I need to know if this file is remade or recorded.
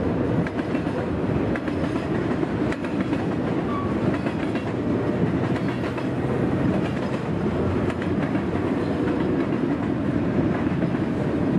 recorded